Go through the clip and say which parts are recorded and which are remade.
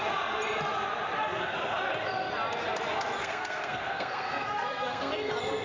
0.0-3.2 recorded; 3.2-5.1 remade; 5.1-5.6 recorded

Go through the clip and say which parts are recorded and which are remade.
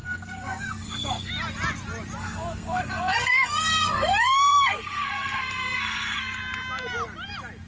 0.0-1.3 remade; 1.3-2.2 recorded; 2.2-6.4 remade; 6.4-7.7 recorded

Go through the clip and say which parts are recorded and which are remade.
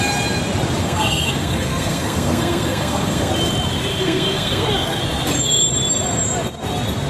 0.0-0.8 recorded; 0.8-3.3 remade; 3.3-3.9 recorded; 3.9-5.0 remade; 5.0-7.1 recorded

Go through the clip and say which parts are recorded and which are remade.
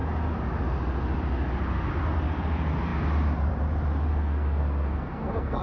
0.0-4.1 recorded; 4.1-5.6 remade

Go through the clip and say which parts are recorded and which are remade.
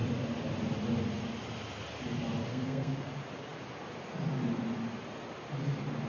0.0-2.5 recorded; 2.5-3.1 remade; 3.1-6.1 recorded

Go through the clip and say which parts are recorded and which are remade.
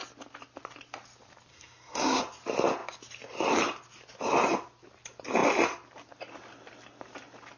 0.0-1.5 recorded; 1.5-2.2 remade; 2.2-7.6 recorded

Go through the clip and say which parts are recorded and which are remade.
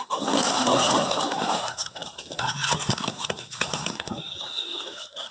0.0-5.3 remade